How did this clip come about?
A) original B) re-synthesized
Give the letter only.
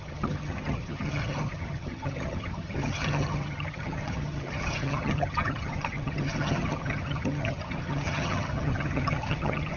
B